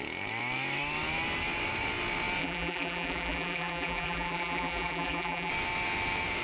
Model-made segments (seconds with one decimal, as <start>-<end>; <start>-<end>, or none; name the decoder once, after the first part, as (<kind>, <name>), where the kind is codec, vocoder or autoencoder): 2.4-5.5 (vocoder, BigVGAN v2)